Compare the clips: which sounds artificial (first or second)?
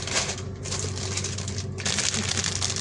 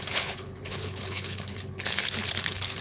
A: second